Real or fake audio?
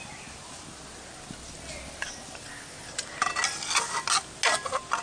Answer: real